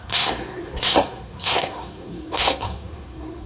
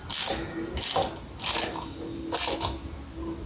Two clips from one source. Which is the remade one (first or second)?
first